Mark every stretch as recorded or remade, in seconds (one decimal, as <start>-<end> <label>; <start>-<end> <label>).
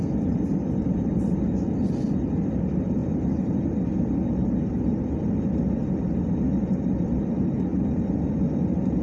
0.0-9.0 recorded